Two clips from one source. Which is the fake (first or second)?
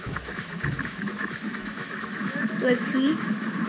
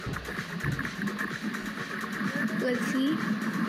first